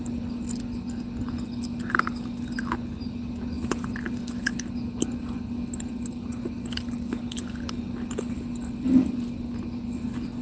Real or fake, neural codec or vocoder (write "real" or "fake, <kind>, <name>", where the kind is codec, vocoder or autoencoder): real